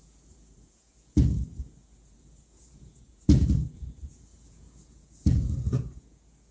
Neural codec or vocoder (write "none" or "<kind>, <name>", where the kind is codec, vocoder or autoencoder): vocoder, Vocos